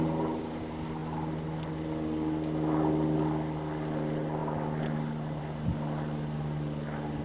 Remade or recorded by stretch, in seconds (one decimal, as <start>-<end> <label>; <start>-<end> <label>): 0.0-7.2 recorded